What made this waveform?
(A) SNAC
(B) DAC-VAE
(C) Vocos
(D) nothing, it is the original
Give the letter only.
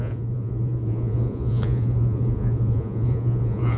C